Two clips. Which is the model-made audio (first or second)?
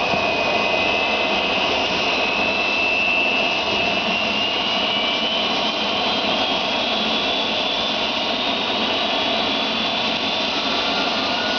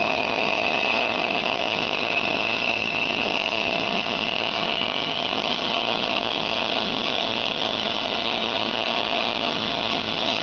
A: second